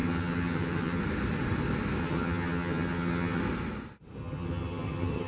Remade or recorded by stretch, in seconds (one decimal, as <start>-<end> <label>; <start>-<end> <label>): 0.0-1.0 remade; 1.0-2.0 recorded; 2.0-3.4 remade; 3.4-4.2 recorded; 4.2-5.3 remade